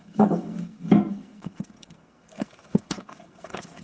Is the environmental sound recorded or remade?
remade